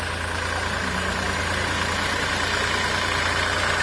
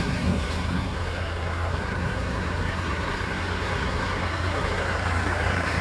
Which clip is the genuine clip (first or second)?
first